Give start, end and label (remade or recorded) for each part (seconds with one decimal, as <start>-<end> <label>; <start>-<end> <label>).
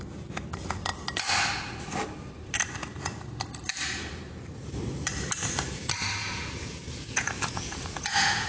0.0-6.2 recorded; 6.2-8.5 remade